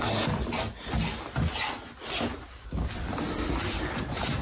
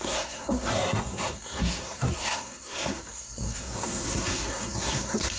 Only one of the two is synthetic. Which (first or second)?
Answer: second